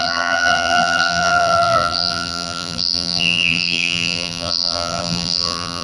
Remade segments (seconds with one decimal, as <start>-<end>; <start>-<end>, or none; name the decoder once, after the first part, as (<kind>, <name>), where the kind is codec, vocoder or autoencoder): 0.0-5.8 (vocoder, BigVGAN v2)